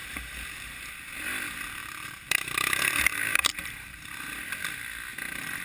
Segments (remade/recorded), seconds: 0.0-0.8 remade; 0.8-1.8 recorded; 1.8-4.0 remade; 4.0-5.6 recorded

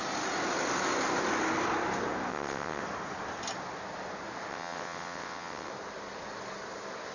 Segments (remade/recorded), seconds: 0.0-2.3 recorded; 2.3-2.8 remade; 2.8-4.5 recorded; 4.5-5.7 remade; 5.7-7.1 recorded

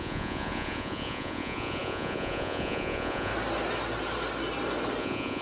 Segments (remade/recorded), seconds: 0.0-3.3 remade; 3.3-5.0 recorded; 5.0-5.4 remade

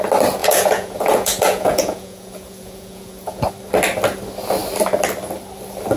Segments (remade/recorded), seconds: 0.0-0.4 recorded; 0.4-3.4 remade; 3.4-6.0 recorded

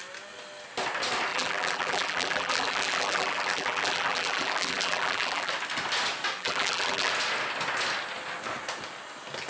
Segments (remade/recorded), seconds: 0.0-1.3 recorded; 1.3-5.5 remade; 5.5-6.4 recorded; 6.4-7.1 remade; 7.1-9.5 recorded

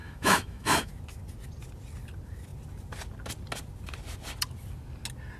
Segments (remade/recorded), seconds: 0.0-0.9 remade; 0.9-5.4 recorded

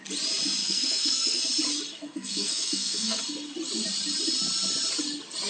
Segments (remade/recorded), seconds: 0.0-0.6 recorded; 0.6-1.4 remade; 1.4-2.0 recorded; 2.0-3.2 remade; 3.2-5.5 recorded

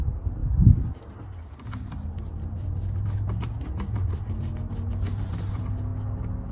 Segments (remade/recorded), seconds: 0.0-6.5 recorded